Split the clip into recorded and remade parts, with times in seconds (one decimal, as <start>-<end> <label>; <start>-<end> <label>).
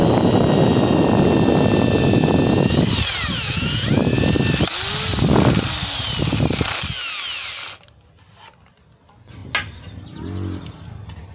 0.0-11.3 recorded